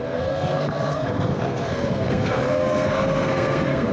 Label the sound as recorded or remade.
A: remade